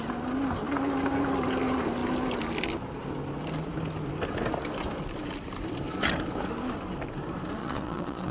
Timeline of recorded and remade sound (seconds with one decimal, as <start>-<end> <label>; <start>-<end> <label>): 0.0-7.6 recorded; 7.6-8.3 remade